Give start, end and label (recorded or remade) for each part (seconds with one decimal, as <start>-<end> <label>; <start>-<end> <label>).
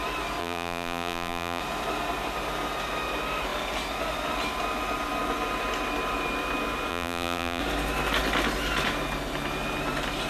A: 0.0-0.4 recorded; 0.4-1.6 remade; 1.6-6.9 recorded; 6.9-7.6 remade; 7.6-10.3 recorded